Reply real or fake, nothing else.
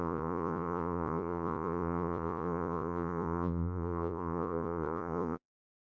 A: fake